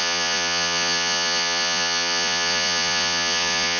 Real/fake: fake